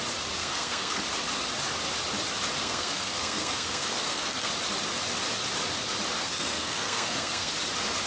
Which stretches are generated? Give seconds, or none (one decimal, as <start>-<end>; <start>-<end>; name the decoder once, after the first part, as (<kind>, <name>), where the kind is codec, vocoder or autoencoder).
0.4-1.0 (codec, SNAC); 2.6-4.5; 6.2-7.5